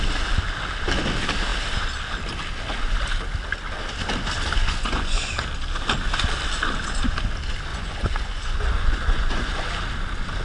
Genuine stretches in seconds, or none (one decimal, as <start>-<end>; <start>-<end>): 0.0-4.6; 5.3-7.7; 9.7-10.4